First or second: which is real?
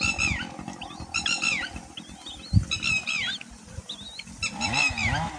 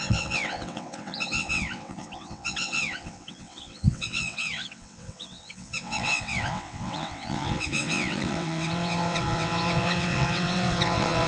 first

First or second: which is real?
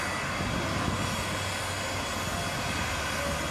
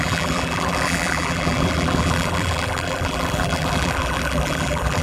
first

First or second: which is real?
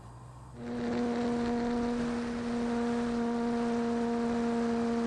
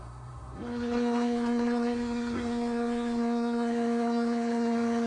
first